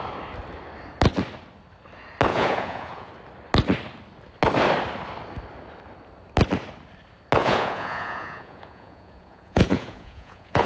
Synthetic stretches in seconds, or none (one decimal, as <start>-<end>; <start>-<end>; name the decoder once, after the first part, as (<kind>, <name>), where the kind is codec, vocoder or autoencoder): 2.3-3.1 (vocoder, Vocos); 7.4-10.7